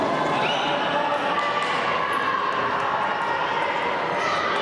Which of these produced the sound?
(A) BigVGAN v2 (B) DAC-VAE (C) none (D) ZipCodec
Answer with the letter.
C